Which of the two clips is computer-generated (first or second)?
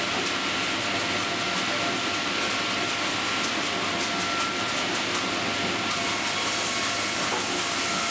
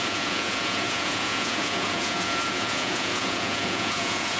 second